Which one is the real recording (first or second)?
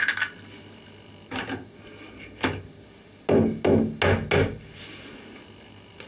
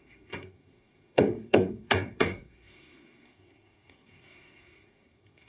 first